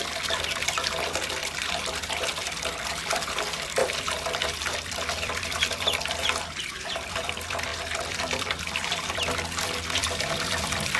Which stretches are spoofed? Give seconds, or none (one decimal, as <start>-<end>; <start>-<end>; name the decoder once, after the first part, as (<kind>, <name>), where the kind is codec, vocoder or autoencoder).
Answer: 0.0-11.0 (vocoder, BigVGAN v2)